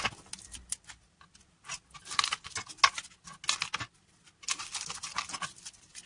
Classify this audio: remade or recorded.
recorded